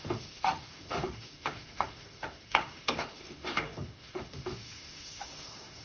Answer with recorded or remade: remade